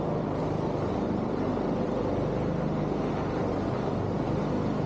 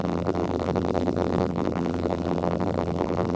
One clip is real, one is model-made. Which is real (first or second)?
first